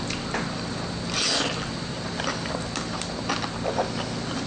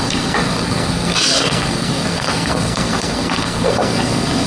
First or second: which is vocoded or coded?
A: second